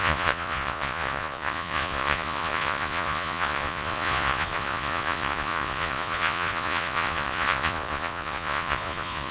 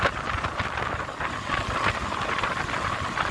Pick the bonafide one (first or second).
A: second